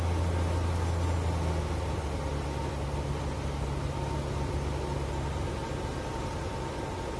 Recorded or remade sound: recorded